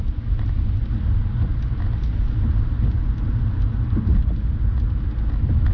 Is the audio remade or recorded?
recorded